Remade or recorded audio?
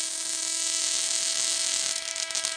remade